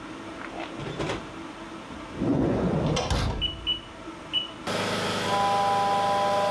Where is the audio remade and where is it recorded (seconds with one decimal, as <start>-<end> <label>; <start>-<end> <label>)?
0.0-2.3 recorded; 2.3-2.8 remade; 2.8-6.5 recorded